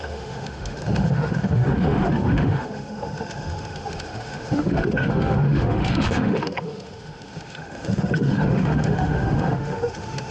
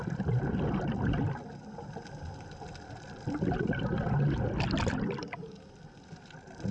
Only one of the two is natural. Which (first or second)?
second